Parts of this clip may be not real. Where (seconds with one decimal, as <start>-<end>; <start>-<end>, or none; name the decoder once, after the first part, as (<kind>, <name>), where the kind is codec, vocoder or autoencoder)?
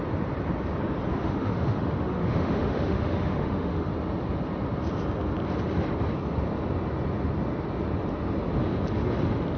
1.1-3.9 (autoencoder, DAC-VAE)